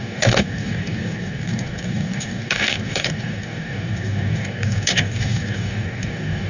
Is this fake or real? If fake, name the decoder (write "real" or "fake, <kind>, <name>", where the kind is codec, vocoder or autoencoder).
fake, codec, DAC